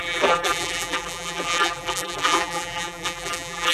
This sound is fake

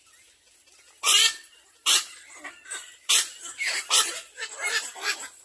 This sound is fake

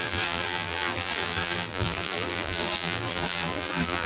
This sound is fake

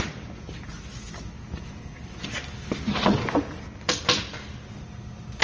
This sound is real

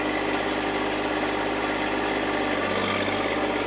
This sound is real